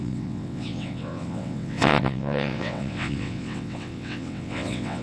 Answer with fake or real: fake